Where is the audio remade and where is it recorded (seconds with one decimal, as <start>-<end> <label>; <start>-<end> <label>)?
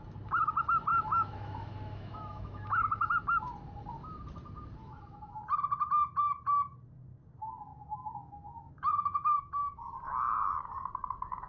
0.0-0.9 recorded; 0.9-3.1 remade; 3.1-4.8 recorded; 4.8-5.4 remade; 5.4-7.7 recorded; 7.7-9.9 remade; 9.9-11.5 recorded